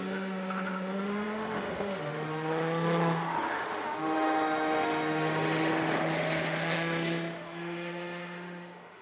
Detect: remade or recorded remade